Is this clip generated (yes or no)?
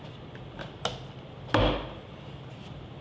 no